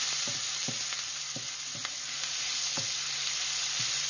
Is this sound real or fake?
real